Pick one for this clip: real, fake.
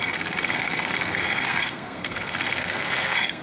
fake